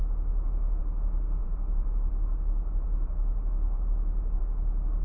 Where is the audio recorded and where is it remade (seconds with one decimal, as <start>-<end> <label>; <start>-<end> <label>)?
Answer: 0.0-1.4 recorded; 1.4-4.4 remade; 4.4-5.0 recorded